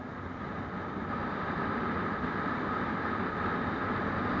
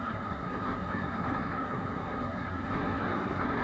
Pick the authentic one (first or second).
first